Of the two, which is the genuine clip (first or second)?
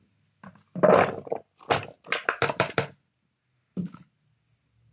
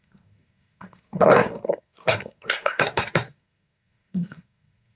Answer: first